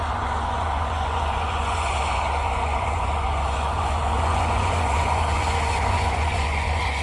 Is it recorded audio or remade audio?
remade